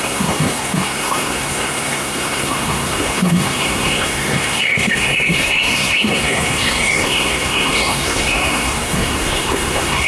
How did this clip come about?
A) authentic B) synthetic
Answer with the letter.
B